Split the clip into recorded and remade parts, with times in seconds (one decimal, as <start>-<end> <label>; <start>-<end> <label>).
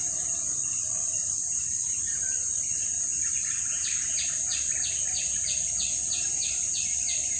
0.0-7.4 recorded